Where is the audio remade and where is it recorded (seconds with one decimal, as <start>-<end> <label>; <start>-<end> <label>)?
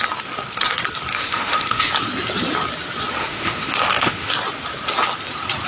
0.0-1.1 recorded; 1.1-1.9 remade; 1.9-3.2 recorded; 3.2-4.3 remade; 4.3-5.7 recorded